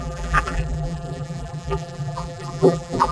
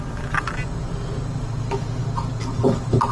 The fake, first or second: first